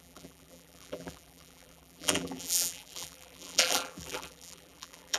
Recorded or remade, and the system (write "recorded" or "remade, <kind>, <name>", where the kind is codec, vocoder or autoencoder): remade, vocoder, BigVGAN v2